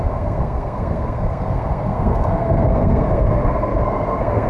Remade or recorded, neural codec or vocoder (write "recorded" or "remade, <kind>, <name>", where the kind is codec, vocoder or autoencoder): remade, codec, SNAC